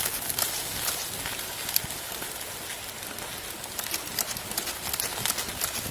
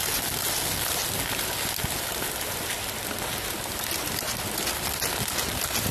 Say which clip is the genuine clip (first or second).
first